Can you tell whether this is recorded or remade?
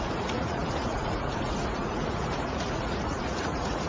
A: remade